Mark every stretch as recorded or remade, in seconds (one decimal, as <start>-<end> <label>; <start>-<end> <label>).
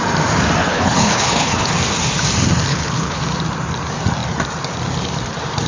0.0-0.6 recorded; 0.6-1.7 remade; 1.7-2.7 recorded; 2.7-3.2 remade; 3.2-5.7 recorded